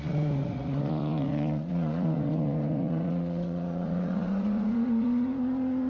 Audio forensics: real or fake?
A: fake